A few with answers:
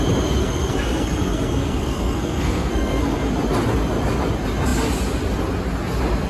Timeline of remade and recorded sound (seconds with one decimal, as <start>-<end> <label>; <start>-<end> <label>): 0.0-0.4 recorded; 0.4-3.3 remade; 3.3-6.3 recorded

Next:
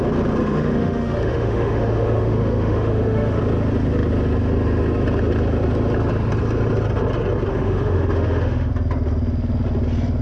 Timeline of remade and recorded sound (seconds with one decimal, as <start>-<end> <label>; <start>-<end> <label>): 0.0-0.4 recorded; 0.4-3.4 remade; 3.4-7.5 recorded; 7.5-8.7 remade; 8.7-10.2 recorded

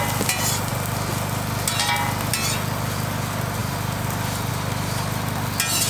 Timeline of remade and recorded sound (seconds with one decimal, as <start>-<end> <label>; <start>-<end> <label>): 0.0-3.6 recorded; 3.6-4.5 remade; 4.5-5.9 recorded

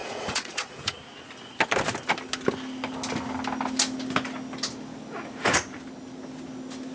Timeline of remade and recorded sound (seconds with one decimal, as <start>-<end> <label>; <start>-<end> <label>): 0.0-0.9 remade; 0.9-6.9 recorded